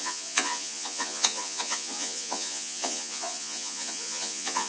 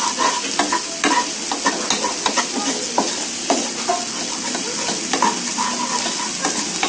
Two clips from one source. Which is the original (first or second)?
second